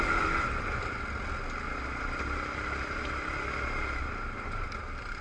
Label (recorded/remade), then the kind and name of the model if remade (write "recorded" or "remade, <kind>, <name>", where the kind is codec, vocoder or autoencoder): recorded